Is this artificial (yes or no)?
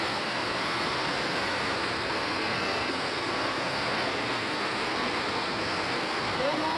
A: yes